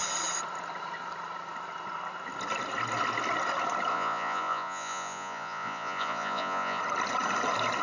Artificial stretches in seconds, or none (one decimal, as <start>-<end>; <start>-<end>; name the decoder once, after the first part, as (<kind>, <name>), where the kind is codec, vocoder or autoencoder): 3.9-6.8 (vocoder, Vocos)